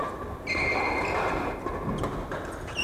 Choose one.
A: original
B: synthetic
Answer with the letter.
A